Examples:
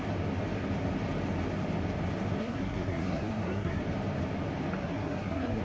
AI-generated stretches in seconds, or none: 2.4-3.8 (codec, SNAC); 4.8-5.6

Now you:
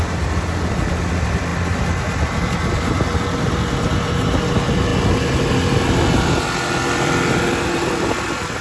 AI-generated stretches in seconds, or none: none

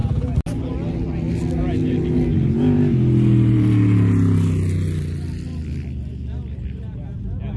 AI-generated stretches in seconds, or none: none